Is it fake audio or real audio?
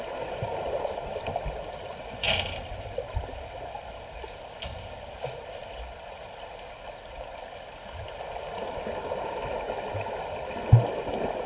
real